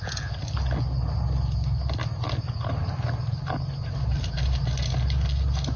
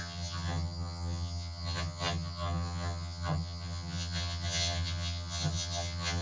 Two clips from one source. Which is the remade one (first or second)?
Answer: second